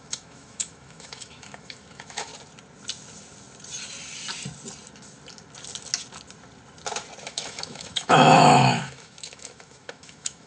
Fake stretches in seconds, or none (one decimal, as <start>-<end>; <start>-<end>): 0.0-2.3; 7.2-10.5